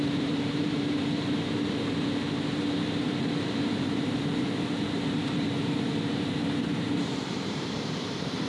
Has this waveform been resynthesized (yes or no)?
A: yes